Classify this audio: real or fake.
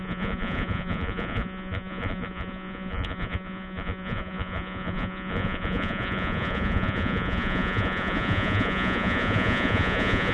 fake